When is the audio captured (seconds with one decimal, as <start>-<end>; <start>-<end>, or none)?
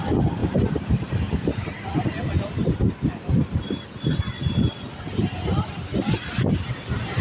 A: 0.0-7.2